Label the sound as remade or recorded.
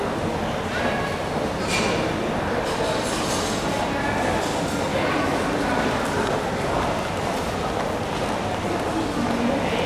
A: recorded